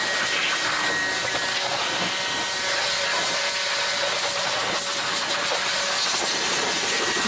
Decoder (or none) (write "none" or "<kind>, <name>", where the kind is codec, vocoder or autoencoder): none